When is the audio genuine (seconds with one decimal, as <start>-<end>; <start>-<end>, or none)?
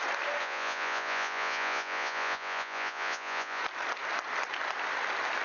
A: 0.0-0.4; 3.6-5.4